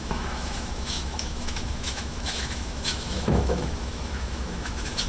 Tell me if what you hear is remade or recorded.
remade